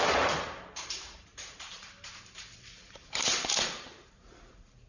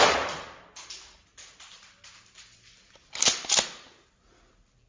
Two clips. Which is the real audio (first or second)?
second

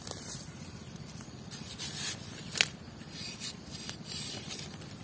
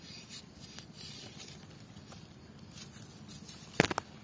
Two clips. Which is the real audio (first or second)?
second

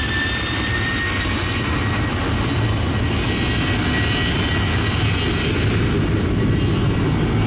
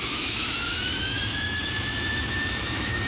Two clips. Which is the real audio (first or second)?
first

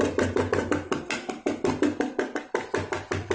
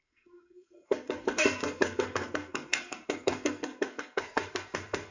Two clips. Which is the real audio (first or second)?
first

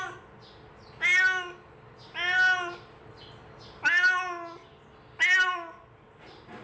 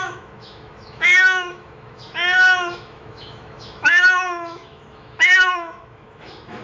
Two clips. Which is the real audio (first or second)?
first